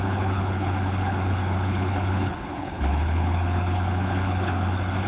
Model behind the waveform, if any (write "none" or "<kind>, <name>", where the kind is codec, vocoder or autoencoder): codec, HILCodec